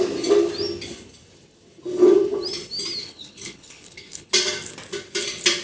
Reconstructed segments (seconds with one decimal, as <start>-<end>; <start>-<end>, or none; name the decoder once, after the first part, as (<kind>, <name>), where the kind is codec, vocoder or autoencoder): 3.0-4.3 (codec, HILCodec)